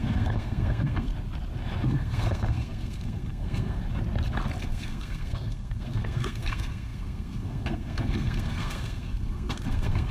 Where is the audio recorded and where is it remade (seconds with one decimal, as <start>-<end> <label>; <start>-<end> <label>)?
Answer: 0.0-1.1 remade; 1.1-1.8 recorded; 1.8-3.8 remade; 3.8-4.6 recorded; 4.6-10.1 remade